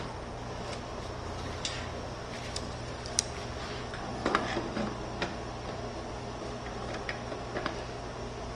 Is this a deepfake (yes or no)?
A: no